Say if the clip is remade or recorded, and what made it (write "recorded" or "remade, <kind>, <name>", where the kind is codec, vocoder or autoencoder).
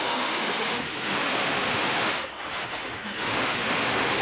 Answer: remade, autoencoder, DAC-VAE